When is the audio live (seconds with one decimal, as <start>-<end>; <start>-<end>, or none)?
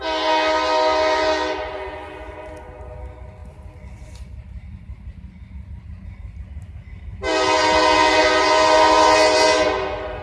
0.0-3.4; 5.9-10.2